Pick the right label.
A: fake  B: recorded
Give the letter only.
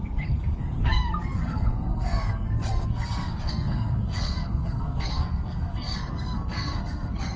A